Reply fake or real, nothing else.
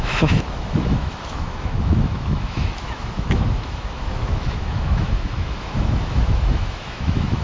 fake